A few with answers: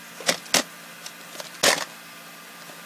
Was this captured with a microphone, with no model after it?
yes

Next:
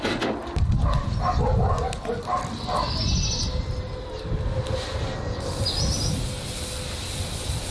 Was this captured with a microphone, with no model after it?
yes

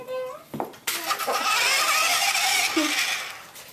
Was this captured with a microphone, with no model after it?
yes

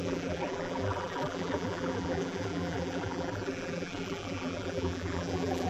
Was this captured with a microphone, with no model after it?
no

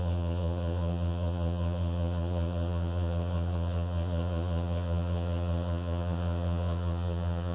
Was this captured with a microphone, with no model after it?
no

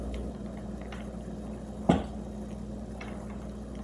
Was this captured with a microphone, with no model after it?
yes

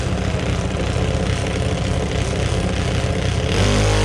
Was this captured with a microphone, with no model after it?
yes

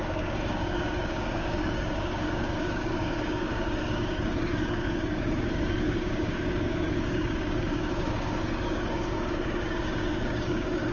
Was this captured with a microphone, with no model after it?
no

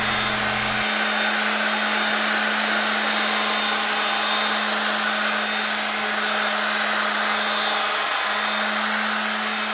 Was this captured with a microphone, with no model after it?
yes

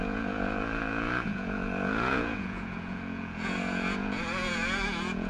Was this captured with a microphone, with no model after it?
no